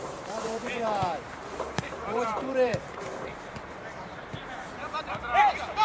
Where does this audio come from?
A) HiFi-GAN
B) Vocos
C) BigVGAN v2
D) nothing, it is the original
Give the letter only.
C